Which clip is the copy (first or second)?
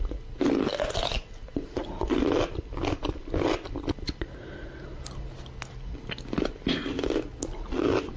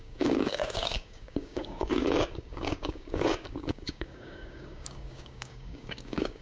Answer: second